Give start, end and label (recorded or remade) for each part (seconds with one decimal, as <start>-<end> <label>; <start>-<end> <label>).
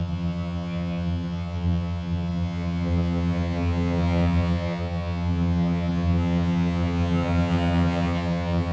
0.0-8.7 remade